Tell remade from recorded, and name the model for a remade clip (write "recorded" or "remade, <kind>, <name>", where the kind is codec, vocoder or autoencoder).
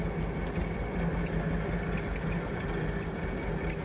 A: recorded